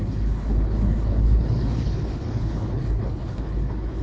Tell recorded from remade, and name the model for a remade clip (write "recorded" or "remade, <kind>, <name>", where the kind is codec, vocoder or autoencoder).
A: remade, codec, HILCodec